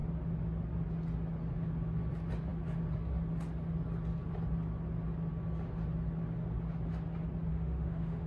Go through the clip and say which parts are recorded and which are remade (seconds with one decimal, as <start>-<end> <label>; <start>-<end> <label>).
0.0-7.5 recorded; 7.5-8.3 remade